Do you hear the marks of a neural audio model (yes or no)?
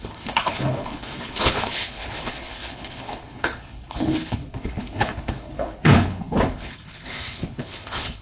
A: yes